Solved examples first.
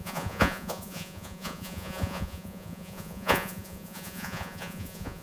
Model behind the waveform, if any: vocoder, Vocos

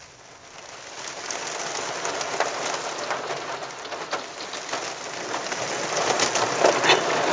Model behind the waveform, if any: none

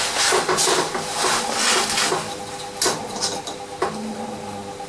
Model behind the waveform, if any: none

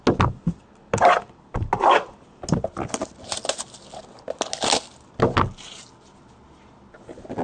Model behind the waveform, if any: none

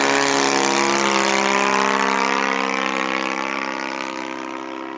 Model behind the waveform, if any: none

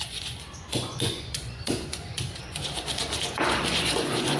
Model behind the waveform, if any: vocoder, Vocos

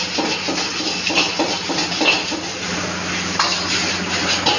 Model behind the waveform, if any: none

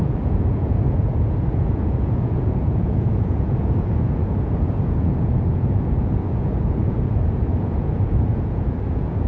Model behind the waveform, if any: vocoder, Vocos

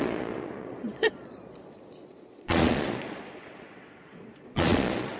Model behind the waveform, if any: vocoder, Vocos